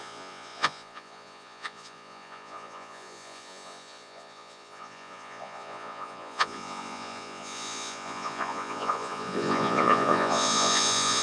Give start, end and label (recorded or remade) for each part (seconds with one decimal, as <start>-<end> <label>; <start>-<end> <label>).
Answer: 0.0-11.2 remade